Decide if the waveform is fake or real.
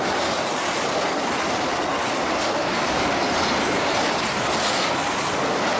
real